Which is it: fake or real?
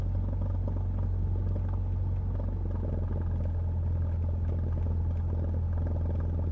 real